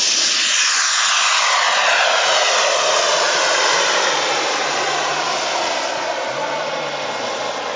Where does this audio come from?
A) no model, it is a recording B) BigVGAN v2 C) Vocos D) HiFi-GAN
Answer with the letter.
A